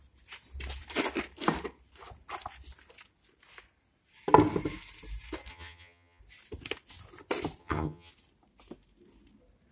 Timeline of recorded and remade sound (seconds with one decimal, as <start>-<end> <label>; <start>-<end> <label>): 0.0-5.5 recorded; 5.5-6.2 remade; 6.2-7.6 recorded; 7.6-8.1 remade; 8.1-9.7 recorded